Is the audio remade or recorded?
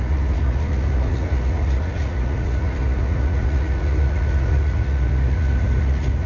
remade